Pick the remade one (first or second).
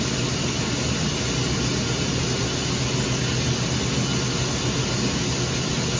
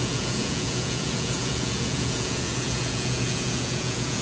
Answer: second